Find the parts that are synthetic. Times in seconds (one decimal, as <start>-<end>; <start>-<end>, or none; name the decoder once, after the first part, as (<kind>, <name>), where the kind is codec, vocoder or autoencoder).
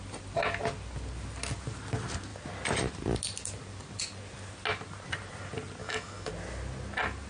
5.8-6.3 (autoencoder, DAC-VAE)